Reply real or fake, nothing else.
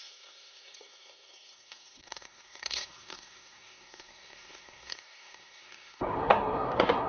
fake